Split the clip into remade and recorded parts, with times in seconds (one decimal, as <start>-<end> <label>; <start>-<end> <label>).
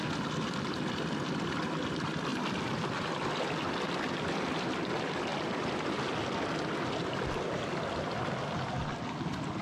0.0-9.6 recorded